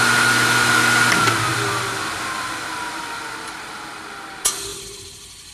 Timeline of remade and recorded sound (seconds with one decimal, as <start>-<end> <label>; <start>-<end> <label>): 0.0-1.5 recorded; 1.5-4.0 remade; 4.0-5.5 recorded